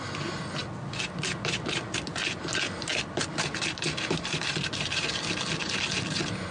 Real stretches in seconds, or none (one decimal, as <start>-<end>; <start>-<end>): 0.0-2.9; 5.4-6.5